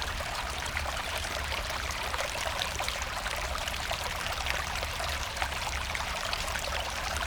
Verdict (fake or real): fake